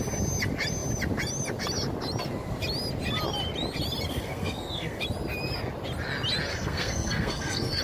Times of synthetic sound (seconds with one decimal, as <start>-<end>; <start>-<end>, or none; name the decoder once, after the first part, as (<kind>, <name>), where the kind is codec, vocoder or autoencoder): 4.1-5.0 (codec, SNAC); 6.5-7.8

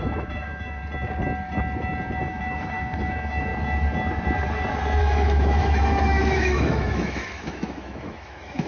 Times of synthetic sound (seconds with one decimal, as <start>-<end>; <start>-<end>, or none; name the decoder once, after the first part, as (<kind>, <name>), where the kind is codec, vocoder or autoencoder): 0.0-0.8 (autoencoder, DAC-VAE); 2.2-3.5; 5.0-8.7